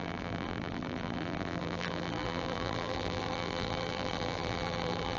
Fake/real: fake